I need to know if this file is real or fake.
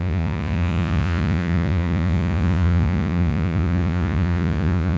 fake